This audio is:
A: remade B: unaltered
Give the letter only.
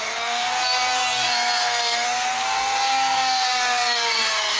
A